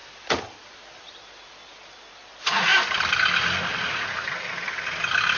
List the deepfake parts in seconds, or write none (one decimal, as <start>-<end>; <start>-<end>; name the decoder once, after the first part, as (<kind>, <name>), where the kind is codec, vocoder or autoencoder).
none

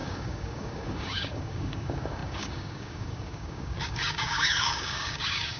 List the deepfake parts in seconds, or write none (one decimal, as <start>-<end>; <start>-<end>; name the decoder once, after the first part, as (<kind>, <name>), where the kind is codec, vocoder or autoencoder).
0.0-5.6 (codec, DAC)

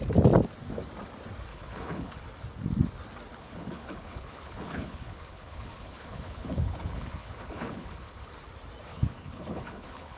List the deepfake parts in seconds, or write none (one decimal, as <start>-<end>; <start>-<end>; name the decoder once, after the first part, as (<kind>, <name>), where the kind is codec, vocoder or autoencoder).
1.5-2.2 (codec, HILCodec); 3.3-8.3; 8.9-10.2

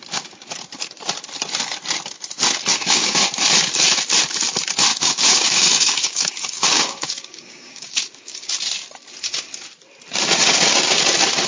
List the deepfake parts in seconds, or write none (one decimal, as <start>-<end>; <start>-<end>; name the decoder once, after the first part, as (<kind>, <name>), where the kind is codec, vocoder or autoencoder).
2.7-3.2 (codec, DAC); 4.9-8.5

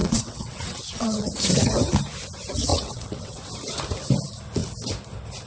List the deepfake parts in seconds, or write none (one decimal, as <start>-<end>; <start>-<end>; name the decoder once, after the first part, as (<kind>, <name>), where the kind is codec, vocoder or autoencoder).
0.0-1.3 (vocoder, WaveNeXt); 2.7-3.5

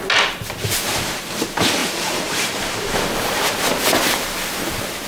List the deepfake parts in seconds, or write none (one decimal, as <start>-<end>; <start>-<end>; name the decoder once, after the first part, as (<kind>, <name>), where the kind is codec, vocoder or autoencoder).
1.8-3.5 (vocoder, BigVGAN v2)

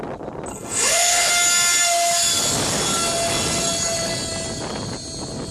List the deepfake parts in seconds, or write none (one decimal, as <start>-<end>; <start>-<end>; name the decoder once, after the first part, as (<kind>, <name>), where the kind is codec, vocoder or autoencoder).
0.5-1.3 (codec, HILCodec)

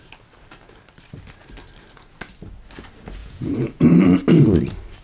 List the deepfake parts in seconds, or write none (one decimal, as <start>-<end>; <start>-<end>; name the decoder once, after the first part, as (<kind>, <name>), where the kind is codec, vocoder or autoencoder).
3.2-4.0 (vocoder, Vocos)